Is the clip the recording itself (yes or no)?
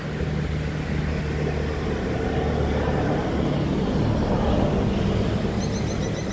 yes